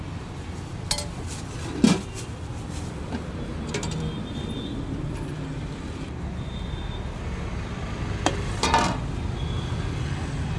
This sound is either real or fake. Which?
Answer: real